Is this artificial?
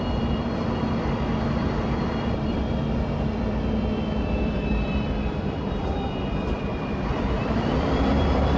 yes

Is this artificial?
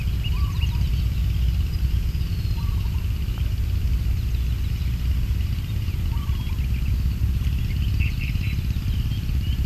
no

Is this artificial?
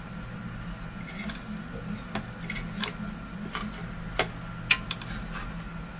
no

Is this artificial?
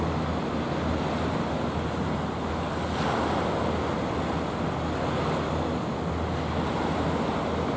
no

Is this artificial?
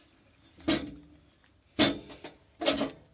no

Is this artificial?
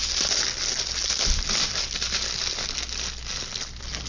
no